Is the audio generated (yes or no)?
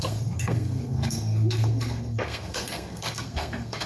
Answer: yes